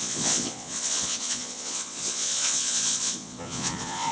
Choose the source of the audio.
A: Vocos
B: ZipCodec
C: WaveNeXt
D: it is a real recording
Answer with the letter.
A